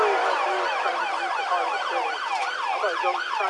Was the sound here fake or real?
real